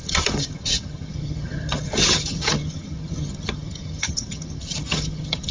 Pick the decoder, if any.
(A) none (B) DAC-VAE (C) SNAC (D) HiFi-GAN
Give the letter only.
D